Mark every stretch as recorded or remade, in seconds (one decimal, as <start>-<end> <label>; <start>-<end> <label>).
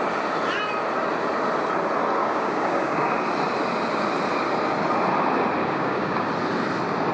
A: 0.0-2.2 recorded; 2.2-3.1 remade; 3.1-5.6 recorded; 5.6-6.3 remade; 6.3-7.1 recorded